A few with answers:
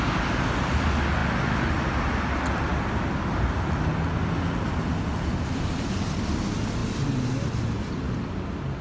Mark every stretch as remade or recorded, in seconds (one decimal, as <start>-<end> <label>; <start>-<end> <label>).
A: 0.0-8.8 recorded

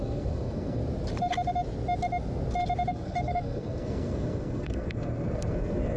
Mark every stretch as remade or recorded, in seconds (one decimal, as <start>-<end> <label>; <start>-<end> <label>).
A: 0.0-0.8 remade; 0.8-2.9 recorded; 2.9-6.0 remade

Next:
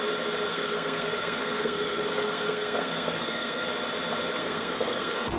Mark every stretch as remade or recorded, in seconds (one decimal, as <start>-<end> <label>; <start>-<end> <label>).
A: 0.0-0.5 recorded; 0.5-3.7 remade; 3.7-4.4 recorded; 4.4-5.4 remade

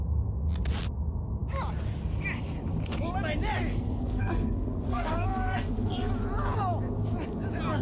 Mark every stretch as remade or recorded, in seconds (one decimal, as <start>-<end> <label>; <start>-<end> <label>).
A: 0.0-3.7 recorded; 3.7-6.1 remade; 6.1-7.8 recorded